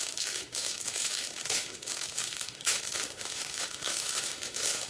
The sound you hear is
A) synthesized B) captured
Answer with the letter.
A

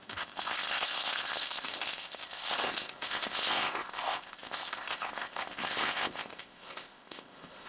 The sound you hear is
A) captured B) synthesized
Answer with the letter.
B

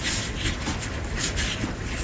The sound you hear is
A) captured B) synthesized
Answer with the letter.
A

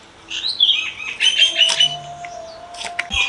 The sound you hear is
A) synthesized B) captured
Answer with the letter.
B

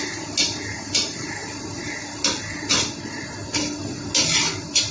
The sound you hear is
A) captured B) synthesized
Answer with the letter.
A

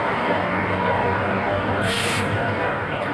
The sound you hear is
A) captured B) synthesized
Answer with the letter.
B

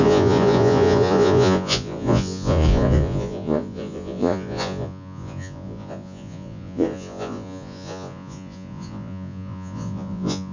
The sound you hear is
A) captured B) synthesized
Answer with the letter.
B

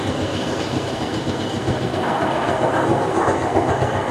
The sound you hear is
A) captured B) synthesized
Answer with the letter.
B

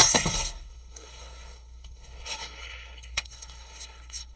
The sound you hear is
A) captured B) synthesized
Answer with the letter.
B